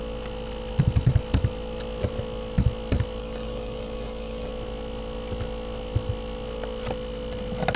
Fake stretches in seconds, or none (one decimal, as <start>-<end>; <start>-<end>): 3.2-4.5